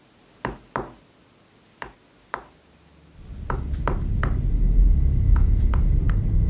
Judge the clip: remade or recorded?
recorded